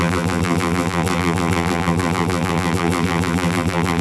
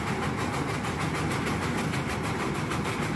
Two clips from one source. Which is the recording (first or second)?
second